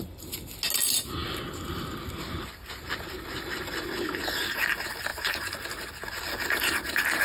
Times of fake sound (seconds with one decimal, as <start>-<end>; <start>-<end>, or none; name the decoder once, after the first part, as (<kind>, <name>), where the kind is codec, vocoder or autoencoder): 1.2-2.1 (vocoder, BigVGAN v2)

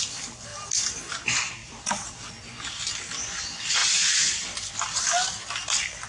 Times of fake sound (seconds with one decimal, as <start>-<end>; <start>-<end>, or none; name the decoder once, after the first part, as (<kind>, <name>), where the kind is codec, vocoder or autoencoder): 1.6-2.3 (vocoder, BigVGAN v2)

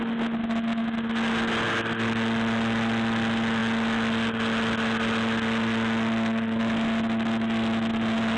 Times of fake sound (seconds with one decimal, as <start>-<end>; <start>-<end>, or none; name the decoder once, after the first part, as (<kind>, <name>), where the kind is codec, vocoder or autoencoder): none

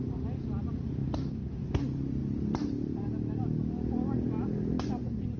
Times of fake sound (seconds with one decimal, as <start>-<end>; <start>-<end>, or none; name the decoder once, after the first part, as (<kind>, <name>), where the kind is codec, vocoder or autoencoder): none

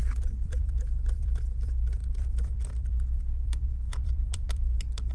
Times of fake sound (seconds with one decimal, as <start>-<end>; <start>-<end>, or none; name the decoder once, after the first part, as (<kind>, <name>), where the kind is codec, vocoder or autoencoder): 0.0-5.1 (vocoder, BigVGAN v2)

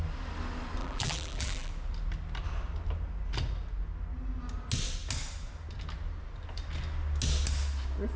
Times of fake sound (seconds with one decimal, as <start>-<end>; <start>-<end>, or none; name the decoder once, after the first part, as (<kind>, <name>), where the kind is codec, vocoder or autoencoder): 0.8-1.7 (vocoder, BigVGAN v2)

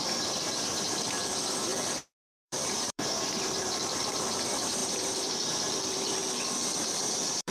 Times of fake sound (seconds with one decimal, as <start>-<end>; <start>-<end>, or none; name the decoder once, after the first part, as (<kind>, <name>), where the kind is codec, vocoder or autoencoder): 0.0-1.2 (vocoder, BigVGAN v2); 2.3-6.2; 6.8-7.5